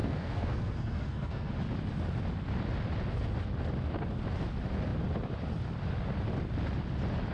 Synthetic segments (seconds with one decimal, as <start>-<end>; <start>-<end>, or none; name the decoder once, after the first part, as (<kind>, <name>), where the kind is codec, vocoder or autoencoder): 0.0-1.5 (codec, SNAC)